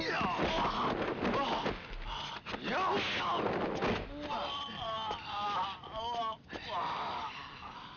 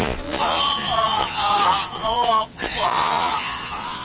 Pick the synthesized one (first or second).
second